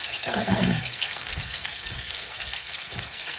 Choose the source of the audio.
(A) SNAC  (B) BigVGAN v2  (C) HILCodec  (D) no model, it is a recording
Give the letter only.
A